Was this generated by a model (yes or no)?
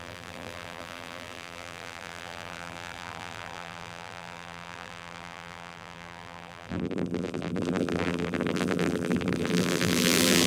yes